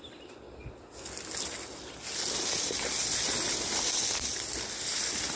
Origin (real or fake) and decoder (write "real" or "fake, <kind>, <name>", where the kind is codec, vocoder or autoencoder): real